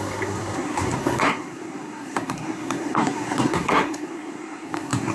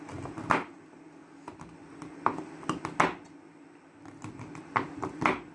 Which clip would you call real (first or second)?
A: second